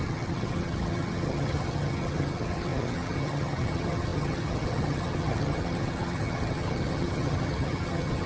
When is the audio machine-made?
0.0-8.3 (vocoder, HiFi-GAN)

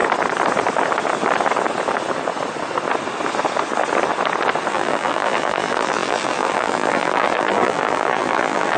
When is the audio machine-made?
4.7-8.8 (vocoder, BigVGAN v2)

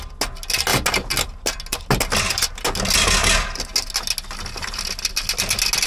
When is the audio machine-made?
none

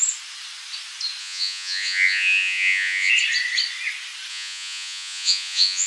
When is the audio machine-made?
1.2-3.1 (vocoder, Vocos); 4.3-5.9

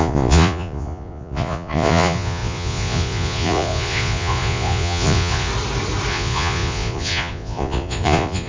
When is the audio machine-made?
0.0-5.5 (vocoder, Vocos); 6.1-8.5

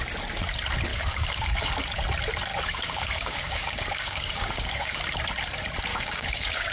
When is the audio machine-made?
0.9-1.7 (codec, DAC); 2.5-5.0; 5.9-6.7

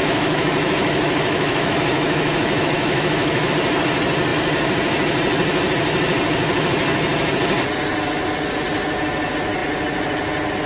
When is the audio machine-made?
0.0-3.5 (autoencoder, DAC-VAE)

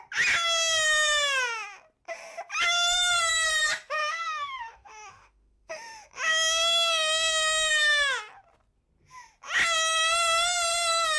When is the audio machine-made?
4.0-7.7 (autoencoder, DAC-VAE)